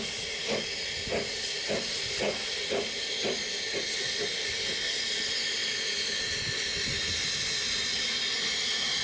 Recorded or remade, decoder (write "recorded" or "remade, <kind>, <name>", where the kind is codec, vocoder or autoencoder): recorded